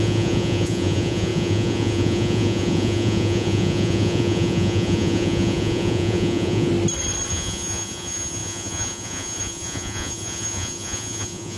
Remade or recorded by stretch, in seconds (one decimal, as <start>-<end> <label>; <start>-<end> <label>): 0.0-6.7 remade; 6.7-7.3 recorded; 7.3-11.6 remade